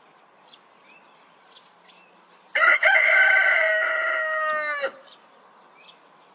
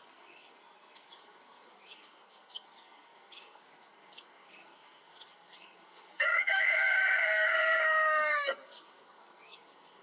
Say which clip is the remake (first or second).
second